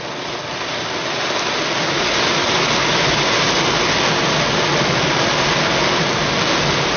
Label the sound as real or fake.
real